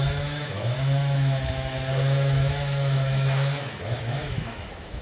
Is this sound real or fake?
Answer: fake